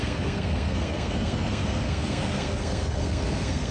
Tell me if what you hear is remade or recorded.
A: remade